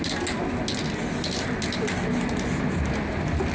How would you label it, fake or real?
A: real